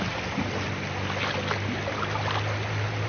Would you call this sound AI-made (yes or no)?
no